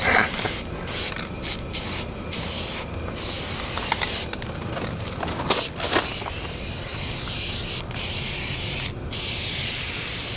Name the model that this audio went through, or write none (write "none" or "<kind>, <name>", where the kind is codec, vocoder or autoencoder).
none